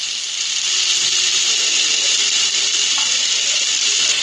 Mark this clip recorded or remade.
recorded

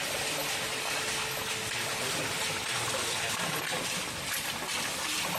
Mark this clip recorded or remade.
recorded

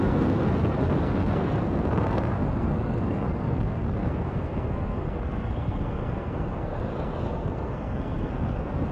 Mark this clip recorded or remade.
remade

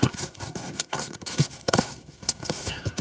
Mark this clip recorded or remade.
remade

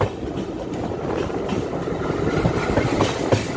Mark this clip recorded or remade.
recorded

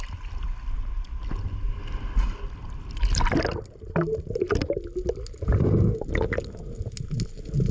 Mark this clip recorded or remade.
recorded